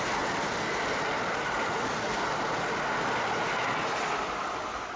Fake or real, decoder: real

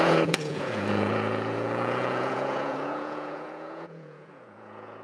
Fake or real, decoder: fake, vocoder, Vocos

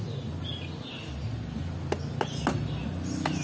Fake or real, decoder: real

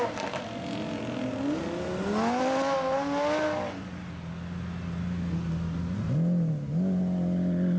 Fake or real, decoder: real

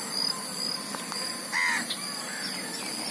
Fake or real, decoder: real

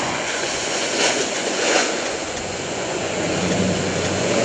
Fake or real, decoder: fake, vocoder, Vocos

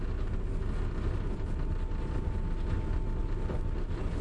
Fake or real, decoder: real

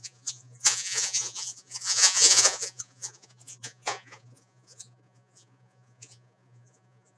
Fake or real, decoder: fake, vocoder, Vocos